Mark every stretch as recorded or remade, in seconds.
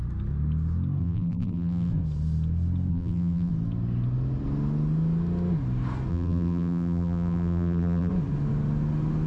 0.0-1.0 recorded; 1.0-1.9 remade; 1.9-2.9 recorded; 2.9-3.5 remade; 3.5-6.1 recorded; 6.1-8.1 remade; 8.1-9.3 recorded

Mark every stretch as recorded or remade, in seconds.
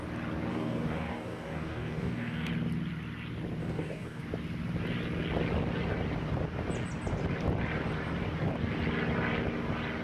0.0-0.5 recorded; 0.5-2.5 remade; 2.5-3.6 recorded; 3.6-4.2 remade; 4.2-10.0 recorded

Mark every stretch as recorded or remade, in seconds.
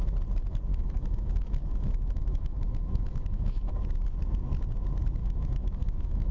0.0-0.7 recorded; 0.7-3.7 remade; 3.7-5.2 recorded; 5.2-6.3 remade